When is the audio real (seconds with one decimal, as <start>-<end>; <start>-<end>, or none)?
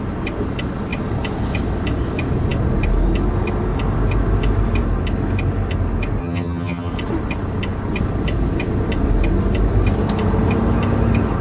0.0-6.2; 6.9-11.4